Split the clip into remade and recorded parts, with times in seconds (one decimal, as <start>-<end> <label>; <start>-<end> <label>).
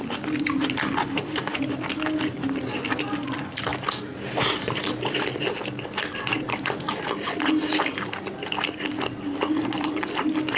0.0-1.0 recorded; 1.0-1.6 remade; 1.6-10.6 recorded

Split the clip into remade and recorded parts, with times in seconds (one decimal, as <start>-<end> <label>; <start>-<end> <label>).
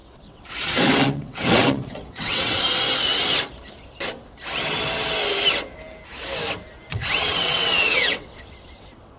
0.0-2.6 remade; 2.6-6.9 recorded; 6.9-9.2 remade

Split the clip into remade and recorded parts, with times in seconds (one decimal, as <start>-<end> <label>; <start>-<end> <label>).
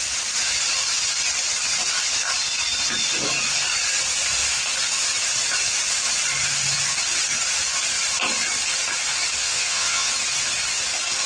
0.0-9.4 recorded; 9.4-10.1 remade; 10.1-11.3 recorded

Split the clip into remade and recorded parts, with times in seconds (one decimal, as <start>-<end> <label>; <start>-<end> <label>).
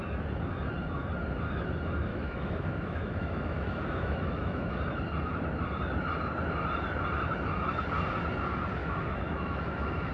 0.0-2.1 recorded; 2.1-4.7 remade; 4.7-8.8 recorded; 8.8-10.1 remade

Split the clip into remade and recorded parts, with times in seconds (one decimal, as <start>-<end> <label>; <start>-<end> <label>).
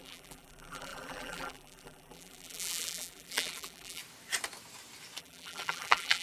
0.0-4.0 remade; 4.0-5.2 recorded; 5.2-6.2 remade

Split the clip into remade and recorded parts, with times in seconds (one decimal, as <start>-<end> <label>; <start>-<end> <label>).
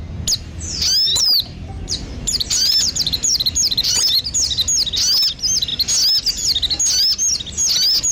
0.0-1.1 recorded; 1.1-4.2 remade; 4.2-8.1 recorded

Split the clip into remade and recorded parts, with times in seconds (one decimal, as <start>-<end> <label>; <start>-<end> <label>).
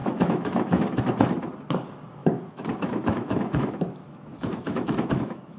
0.0-1.0 remade; 1.0-2.2 recorded; 2.2-5.6 remade